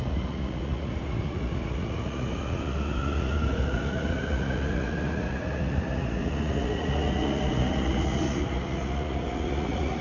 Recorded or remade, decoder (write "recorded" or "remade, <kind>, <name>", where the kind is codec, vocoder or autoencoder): remade, vocoder, Vocos